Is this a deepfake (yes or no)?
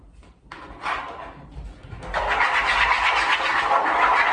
no